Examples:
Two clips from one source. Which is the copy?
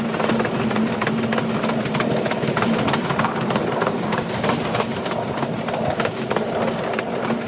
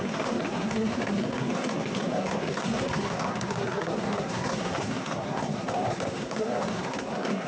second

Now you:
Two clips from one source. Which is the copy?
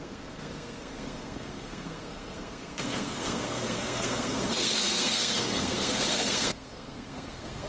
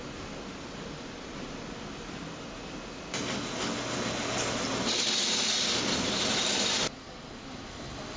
first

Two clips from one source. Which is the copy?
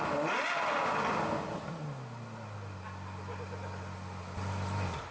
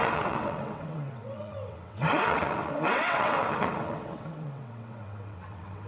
second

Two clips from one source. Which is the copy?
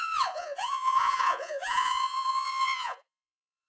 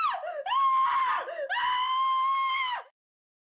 first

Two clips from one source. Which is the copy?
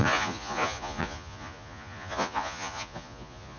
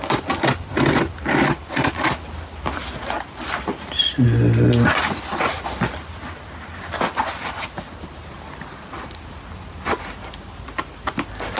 first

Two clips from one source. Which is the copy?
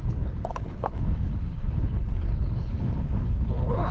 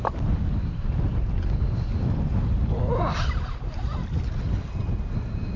first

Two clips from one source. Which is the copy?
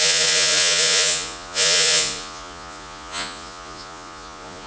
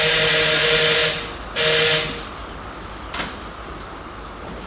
first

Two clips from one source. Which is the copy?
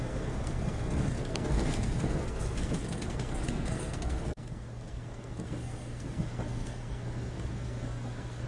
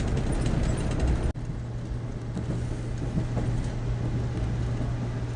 first